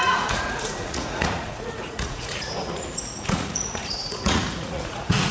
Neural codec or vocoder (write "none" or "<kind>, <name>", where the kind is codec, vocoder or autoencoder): vocoder, Vocos